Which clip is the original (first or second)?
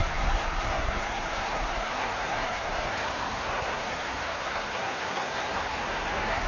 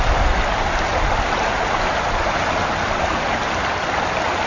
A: second